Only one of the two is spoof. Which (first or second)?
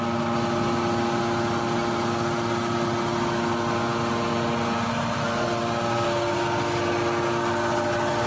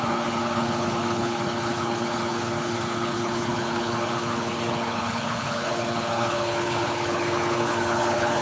second